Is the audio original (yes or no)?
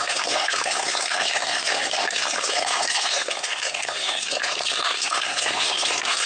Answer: no